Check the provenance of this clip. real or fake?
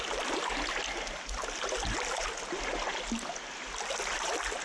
real